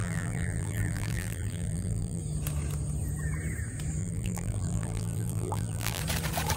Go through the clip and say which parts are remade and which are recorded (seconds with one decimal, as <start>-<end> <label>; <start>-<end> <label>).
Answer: 0.0-2.2 remade; 2.2-4.0 recorded; 4.0-6.0 remade; 6.0-6.6 recorded